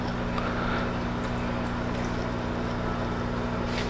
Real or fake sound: real